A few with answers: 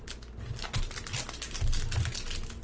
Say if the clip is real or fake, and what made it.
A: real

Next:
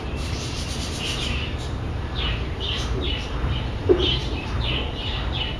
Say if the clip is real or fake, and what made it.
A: fake, vocoder, BigVGAN v2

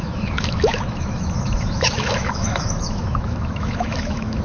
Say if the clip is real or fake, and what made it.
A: fake, autoencoder, DAC-VAE